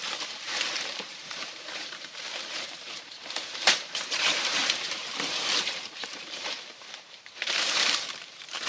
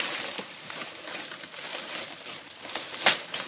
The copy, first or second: first